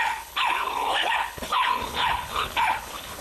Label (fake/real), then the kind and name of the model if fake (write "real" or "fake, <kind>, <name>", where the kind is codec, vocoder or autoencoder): fake, codec, HILCodec